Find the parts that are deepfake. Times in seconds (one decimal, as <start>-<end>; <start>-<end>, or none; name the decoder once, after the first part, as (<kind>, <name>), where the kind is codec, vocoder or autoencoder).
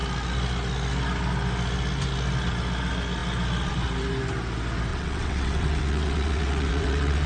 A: 4.9-7.3 (vocoder, WaveNeXt)